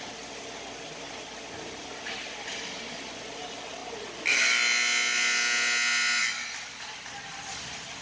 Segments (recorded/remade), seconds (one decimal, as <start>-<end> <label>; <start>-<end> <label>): 0.0-8.0 recorded